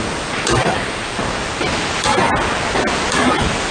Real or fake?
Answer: real